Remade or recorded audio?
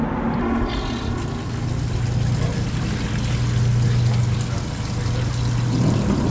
recorded